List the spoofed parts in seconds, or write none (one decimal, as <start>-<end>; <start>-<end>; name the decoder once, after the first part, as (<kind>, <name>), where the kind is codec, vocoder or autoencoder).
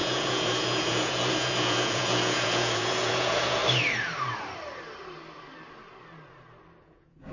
0.0-3.6 (vocoder, Vocos); 6.8-7.3